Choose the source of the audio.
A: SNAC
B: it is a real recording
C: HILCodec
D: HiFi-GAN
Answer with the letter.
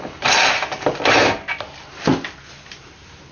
B